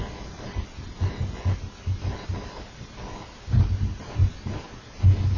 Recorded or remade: recorded